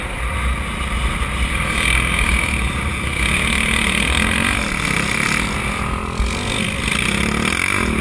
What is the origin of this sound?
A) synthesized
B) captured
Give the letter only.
B